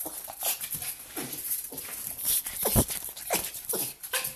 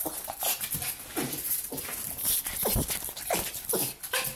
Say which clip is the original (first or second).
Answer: second